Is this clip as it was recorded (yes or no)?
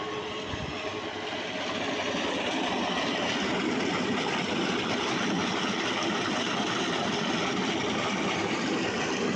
yes